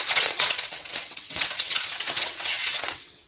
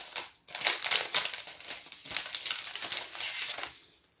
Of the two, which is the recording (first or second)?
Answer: second